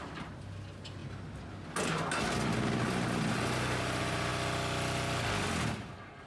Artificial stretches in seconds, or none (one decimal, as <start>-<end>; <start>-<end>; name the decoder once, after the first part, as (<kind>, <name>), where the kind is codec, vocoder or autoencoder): none